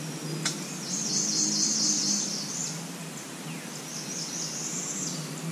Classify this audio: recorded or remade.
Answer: recorded